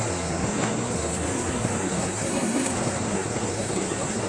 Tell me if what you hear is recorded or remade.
remade